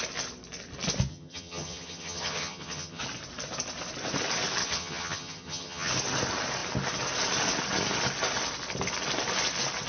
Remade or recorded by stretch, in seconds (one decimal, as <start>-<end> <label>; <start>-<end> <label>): 0.0-1.1 recorded; 1.1-3.0 remade; 3.0-4.6 recorded; 4.6-5.9 remade; 5.9-9.9 recorded